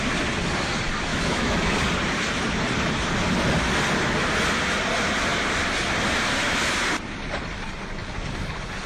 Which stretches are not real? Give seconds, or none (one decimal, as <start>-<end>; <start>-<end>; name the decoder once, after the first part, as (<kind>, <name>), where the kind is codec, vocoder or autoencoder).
1.1-1.8 (autoencoder, DAC-VAE)